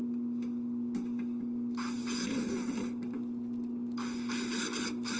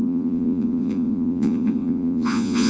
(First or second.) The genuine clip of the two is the first